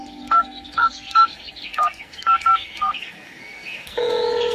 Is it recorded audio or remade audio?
remade